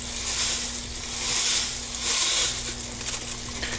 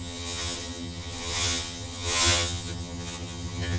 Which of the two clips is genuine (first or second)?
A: first